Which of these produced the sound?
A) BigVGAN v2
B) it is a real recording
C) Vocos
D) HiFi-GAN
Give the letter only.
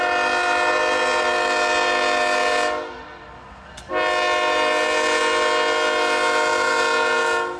B